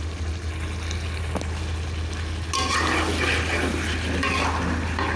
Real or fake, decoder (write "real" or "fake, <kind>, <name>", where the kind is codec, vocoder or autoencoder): real